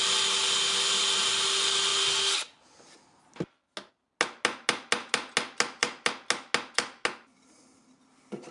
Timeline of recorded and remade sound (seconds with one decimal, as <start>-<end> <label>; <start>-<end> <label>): 0.0-8.5 recorded